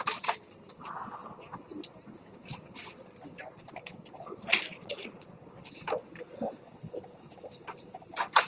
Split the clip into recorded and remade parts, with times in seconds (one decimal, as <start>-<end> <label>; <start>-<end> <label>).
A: 0.0-4.8 recorded; 4.8-5.4 remade; 5.4-8.5 recorded